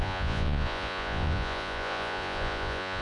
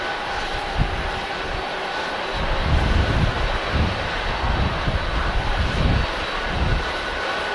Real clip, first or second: second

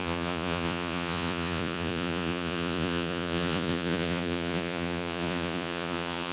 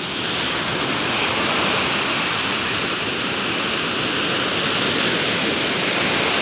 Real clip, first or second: second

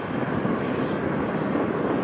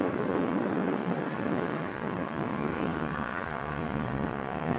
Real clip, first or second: first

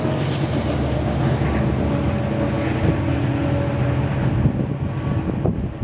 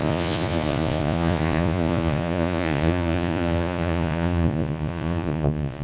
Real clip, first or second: first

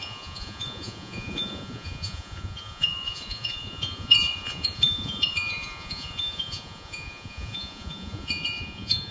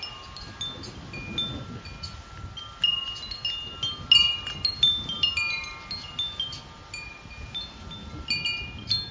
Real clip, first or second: second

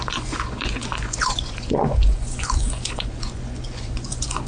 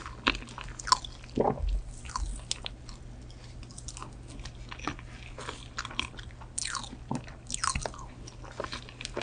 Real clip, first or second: second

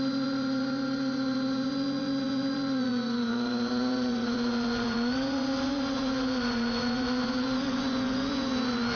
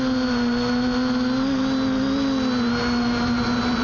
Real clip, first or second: second